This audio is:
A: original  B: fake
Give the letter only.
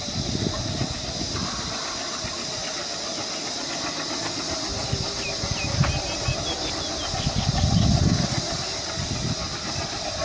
A